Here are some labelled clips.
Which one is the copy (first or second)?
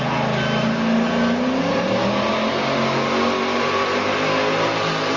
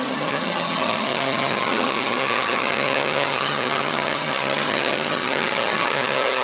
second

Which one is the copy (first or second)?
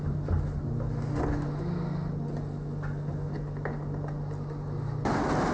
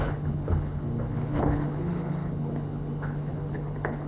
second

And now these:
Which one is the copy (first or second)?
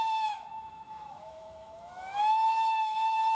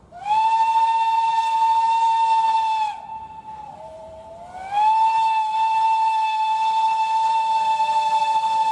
first